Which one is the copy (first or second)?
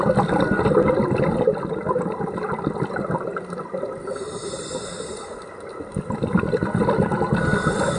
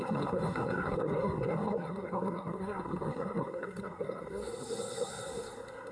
second